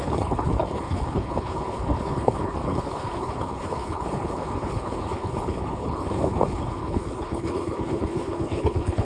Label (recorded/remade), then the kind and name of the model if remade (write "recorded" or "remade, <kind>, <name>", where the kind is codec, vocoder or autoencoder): remade, codec, HILCodec